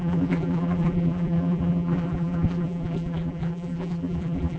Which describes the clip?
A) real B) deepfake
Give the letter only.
B